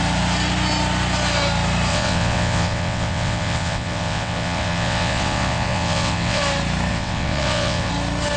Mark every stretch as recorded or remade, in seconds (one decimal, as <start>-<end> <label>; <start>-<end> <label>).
0.0-1.9 recorded; 1.9-6.4 remade; 6.4-6.9 recorded; 6.9-7.9 remade; 7.9-8.4 recorded